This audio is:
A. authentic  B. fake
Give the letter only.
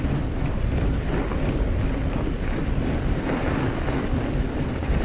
A